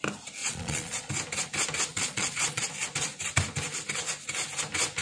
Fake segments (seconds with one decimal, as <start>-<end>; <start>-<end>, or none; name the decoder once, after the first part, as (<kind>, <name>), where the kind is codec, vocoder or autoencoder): 0.4-1.1 (vocoder, Vocos); 1.9-2.7